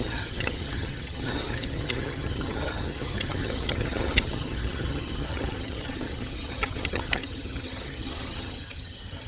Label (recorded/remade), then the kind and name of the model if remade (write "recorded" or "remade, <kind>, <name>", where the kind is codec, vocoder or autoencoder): remade, vocoder, HiFi-GAN